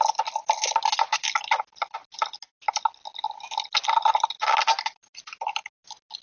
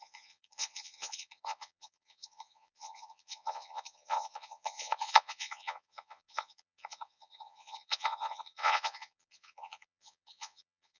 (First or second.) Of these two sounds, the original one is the first